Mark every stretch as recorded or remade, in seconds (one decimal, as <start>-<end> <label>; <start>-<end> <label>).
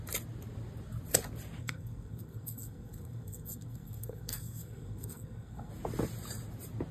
0.0-1.6 recorded; 1.6-5.7 remade; 5.7-6.9 recorded